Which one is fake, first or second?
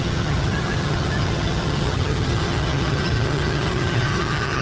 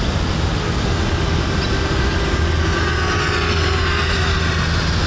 first